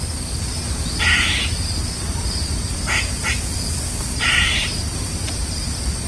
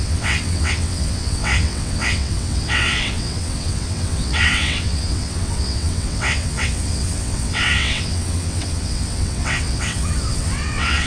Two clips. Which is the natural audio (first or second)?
first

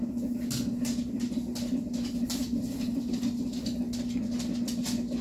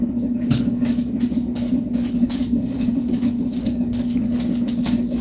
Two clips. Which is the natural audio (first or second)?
first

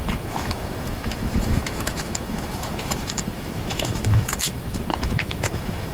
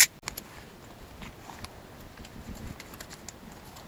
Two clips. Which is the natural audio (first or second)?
second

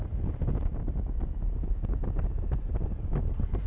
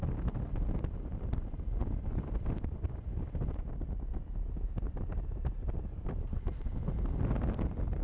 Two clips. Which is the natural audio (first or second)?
first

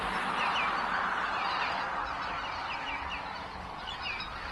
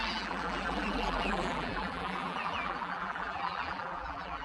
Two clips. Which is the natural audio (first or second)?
first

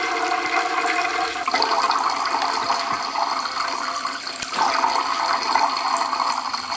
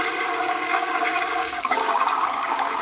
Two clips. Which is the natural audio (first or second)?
first